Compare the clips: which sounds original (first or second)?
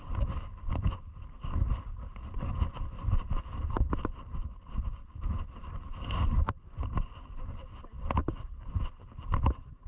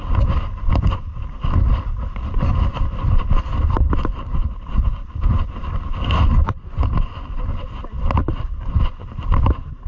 first